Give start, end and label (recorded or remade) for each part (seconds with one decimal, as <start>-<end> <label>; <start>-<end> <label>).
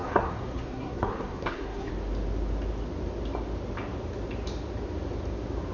0.0-1.9 remade; 1.9-5.7 recorded